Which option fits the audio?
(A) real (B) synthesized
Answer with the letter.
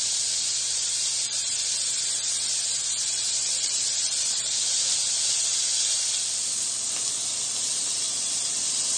A